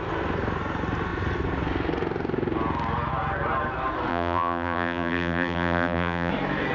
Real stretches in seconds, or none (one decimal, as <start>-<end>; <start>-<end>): 0.0-4.1; 6.3-6.7